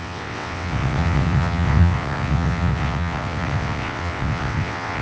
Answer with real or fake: fake